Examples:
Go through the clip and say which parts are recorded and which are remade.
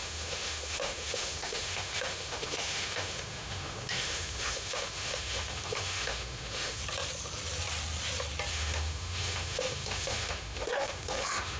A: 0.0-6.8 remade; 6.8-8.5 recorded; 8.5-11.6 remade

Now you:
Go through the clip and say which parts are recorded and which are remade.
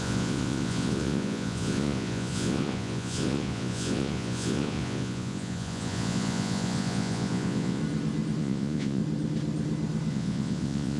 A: 0.0-7.8 remade; 7.8-8.4 recorded; 8.4-9.0 remade; 9.0-10.1 recorded; 10.1-11.0 remade